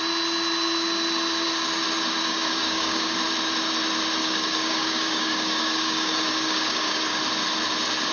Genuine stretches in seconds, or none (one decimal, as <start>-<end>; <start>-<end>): 0.0-2.2; 3.2-4.2; 7.2-8.1